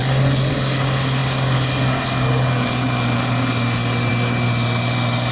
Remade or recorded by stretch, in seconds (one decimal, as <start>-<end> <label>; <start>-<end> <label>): 0.0-5.3 recorded